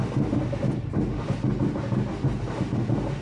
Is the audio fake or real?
real